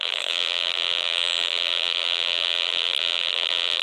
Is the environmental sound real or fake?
fake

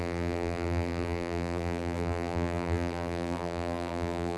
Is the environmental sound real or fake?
fake